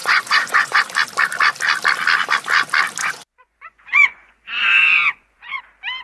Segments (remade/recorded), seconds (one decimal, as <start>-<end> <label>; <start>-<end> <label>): 0.0-0.8 remade; 0.8-3.0 recorded; 3.0-5.6 remade; 5.6-6.0 recorded